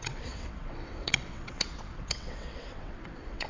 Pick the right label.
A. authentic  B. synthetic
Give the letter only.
B